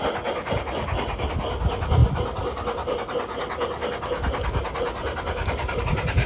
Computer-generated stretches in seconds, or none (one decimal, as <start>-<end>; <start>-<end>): none